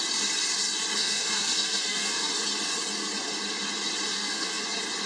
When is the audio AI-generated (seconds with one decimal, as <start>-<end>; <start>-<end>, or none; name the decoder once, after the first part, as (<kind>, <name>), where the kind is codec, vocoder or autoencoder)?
1.0-2.3 (codec, SNAC); 4.1-4.6